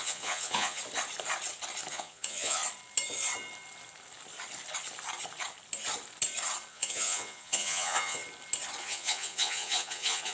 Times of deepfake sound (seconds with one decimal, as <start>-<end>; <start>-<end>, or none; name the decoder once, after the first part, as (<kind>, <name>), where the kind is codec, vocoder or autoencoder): 0.0-0.8 (vocoder, Vocos); 1.9-2.6; 6.7-8.2; 8.8-10.3